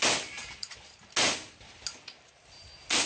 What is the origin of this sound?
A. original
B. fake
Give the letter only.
A